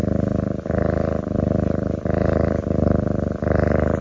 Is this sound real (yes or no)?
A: yes